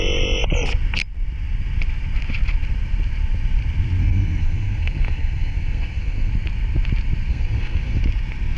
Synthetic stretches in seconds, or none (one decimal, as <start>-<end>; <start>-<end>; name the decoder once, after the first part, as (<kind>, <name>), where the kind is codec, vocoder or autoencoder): 4.0-6.3 (codec, SNAC); 7.3-8.0